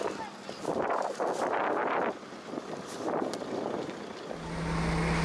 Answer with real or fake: real